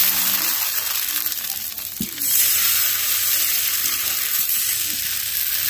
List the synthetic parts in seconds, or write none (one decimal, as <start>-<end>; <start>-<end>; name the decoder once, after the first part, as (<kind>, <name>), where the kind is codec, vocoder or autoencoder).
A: 0.0-2.8 (vocoder, BigVGAN v2); 3.5-4.6